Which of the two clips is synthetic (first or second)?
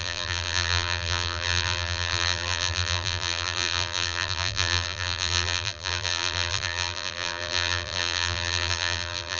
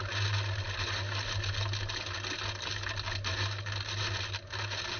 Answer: first